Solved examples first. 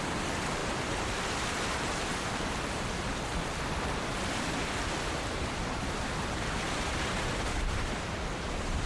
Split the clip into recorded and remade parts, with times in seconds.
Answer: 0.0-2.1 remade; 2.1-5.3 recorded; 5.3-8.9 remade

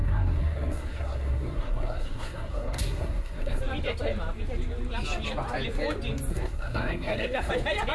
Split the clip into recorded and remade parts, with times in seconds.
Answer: 0.0-3.6 remade; 3.6-6.3 recorded; 6.3-7.5 remade; 7.5-7.9 recorded

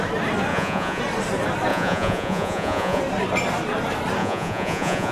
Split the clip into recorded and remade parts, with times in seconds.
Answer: 0.0-0.5 recorded; 0.5-1.0 remade; 1.0-1.7 recorded; 1.7-3.0 remade; 3.0-4.2 recorded; 4.2-5.1 remade

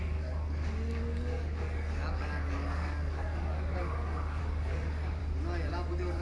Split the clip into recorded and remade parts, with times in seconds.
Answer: 0.0-5.2 remade; 5.2-5.7 recorded; 5.7-6.2 remade